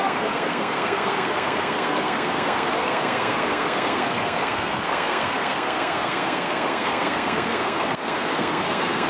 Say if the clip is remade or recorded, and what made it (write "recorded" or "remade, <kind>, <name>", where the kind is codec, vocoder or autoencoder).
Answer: remade, codec, SNAC